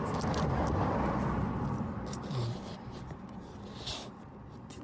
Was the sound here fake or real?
real